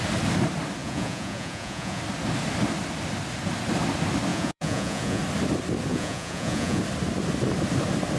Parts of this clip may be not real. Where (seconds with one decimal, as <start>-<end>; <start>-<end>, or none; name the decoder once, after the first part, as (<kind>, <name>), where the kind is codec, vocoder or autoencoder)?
0.8-2.0 (vocoder, Vocos); 4.3-5.2; 5.9-6.8